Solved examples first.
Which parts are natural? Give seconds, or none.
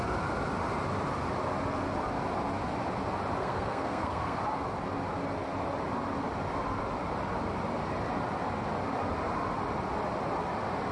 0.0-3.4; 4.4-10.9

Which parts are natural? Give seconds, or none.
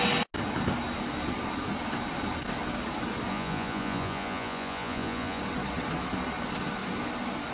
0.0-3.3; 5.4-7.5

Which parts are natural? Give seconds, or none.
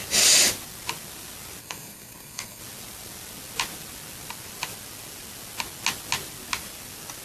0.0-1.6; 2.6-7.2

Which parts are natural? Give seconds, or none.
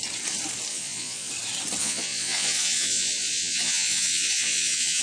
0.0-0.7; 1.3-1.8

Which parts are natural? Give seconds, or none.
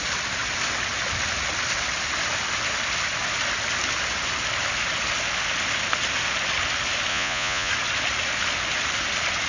0.0-7.1; 7.7-9.5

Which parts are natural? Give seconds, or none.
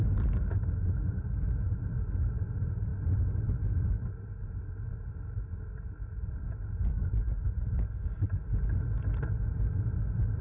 0.0-6.9; 8.2-10.4